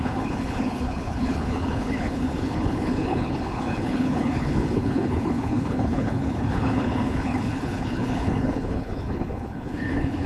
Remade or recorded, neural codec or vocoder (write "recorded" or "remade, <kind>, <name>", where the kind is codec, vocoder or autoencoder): remade, codec, HILCodec